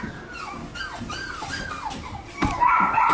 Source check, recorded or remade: recorded